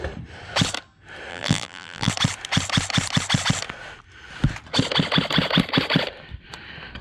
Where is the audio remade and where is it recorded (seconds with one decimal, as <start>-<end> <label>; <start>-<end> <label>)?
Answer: 0.0-1.3 recorded; 1.3-2.1 remade; 2.1-7.0 recorded